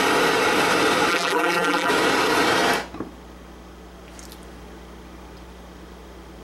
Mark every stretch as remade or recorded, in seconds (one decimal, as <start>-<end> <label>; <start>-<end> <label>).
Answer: 0.0-1.1 recorded; 1.1-1.9 remade; 1.9-6.4 recorded